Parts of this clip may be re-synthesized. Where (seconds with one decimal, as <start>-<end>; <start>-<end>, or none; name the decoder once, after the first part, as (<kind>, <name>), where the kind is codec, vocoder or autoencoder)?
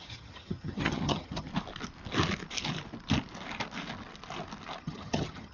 0.0-1.5 (vocoder, HiFi-GAN); 4.8-5.5